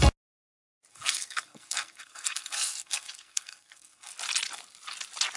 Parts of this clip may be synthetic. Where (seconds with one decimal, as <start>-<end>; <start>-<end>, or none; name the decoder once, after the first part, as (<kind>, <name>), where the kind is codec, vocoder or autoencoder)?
0.9-4.1 (codec, SNAC)